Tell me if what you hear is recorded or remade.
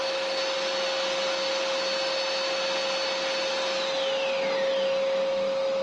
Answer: recorded